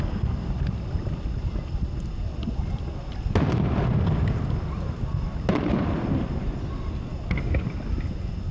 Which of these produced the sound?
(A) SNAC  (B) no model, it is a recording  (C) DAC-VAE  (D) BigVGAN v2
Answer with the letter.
B